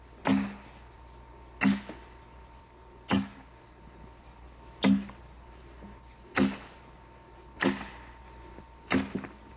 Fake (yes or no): no